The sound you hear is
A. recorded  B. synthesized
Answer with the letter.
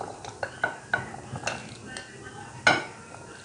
A